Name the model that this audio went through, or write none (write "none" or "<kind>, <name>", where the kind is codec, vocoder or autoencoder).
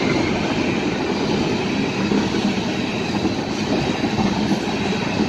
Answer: none